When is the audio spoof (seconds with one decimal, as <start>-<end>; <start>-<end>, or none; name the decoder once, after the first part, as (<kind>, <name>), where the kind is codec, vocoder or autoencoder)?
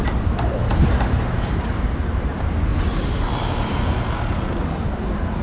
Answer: 0.0-0.6 (vocoder, BigVGAN v2); 1.6-5.4